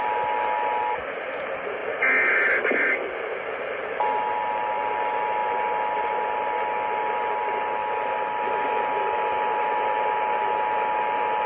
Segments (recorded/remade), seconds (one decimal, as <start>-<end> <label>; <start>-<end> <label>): 0.0-11.5 recorded

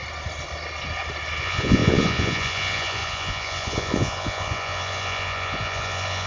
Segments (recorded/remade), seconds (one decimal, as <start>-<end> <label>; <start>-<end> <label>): 0.0-1.4 recorded; 1.4-6.3 remade

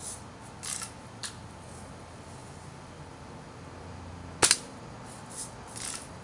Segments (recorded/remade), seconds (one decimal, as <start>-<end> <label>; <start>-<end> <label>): 0.0-6.2 recorded

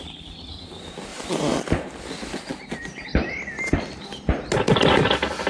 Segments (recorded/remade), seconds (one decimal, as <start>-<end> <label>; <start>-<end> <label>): 0.0-1.1 recorded; 1.1-1.6 remade; 1.6-5.5 recorded

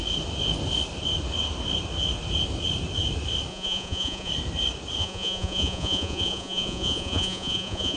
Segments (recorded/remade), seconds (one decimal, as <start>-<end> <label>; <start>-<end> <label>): 0.0-3.5 recorded; 3.5-4.3 remade; 4.3-5.0 recorded; 5.0-8.0 remade

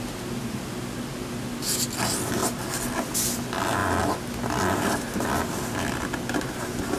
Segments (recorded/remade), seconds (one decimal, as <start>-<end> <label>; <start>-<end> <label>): 0.0-7.0 recorded

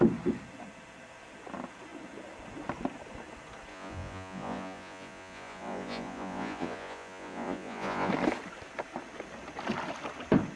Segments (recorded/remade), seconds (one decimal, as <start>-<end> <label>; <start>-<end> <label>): 0.0-3.7 recorded; 3.7-8.1 remade; 8.1-10.6 recorded

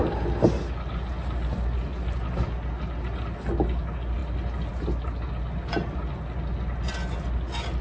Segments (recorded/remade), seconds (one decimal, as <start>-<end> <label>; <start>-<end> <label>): 0.0-7.8 recorded